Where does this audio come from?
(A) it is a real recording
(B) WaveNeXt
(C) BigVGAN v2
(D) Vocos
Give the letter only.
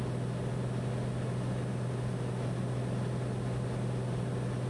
A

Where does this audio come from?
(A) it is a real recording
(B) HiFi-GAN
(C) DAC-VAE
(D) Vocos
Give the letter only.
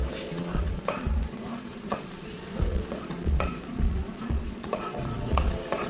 D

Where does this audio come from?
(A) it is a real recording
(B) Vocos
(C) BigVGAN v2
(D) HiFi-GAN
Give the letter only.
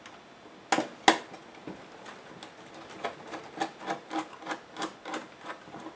A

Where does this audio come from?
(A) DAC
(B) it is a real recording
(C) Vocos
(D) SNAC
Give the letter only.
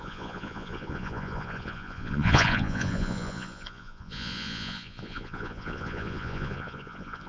C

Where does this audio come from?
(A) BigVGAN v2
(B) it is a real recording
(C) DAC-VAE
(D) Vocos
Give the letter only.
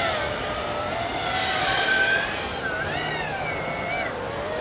B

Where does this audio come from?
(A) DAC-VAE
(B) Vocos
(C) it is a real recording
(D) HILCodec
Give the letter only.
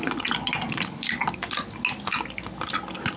C